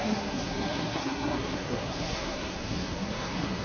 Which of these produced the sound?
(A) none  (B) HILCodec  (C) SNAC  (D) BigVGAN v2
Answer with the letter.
C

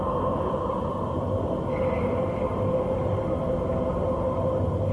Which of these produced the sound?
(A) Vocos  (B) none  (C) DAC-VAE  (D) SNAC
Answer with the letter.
B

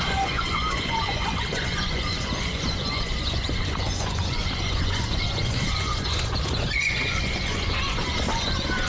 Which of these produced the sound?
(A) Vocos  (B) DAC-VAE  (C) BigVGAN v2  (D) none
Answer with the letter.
A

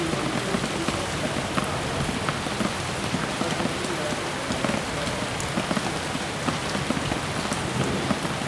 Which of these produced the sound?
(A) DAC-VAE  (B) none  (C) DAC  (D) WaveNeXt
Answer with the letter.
B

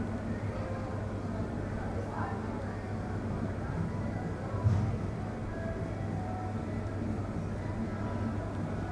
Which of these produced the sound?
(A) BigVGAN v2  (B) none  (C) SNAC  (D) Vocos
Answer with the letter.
B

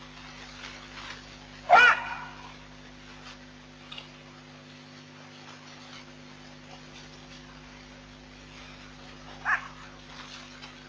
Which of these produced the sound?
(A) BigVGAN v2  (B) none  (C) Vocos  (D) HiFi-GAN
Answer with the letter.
B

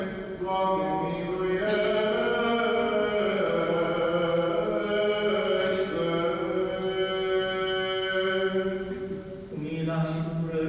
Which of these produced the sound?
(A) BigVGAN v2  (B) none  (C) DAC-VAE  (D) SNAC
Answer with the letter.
B